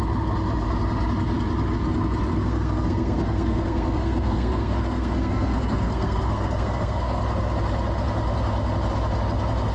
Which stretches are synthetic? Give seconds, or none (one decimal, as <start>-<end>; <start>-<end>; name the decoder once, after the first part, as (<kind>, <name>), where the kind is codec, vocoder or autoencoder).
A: 2.3-7.2 (codec, SNAC)